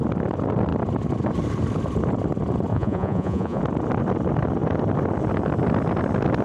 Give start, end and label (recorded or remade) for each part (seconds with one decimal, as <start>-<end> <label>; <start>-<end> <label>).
0.0-2.7 recorded; 2.7-3.6 remade; 3.6-6.4 recorded